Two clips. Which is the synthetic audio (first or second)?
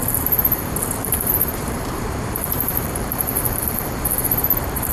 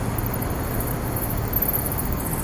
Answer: first